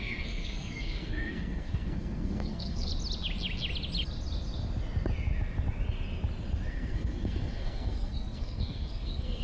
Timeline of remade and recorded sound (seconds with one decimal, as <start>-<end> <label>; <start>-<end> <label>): 0.0-2.9 remade; 2.9-6.7 recorded; 6.7-9.4 remade